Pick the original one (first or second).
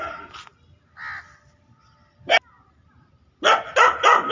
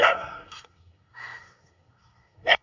first